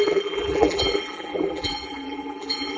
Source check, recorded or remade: remade